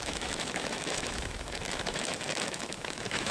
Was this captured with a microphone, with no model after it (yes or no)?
no